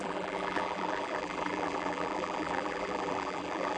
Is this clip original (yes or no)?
no